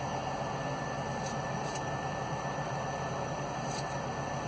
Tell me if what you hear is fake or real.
real